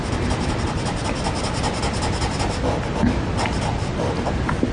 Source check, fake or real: real